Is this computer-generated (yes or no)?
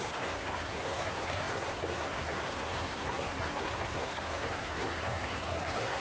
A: yes